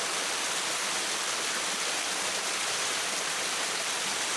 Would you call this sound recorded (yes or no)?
yes